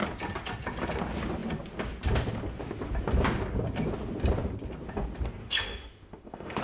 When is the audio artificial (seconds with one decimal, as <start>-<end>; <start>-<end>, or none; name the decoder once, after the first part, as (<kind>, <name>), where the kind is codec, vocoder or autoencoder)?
5.4-6.6 (autoencoder, DAC-VAE)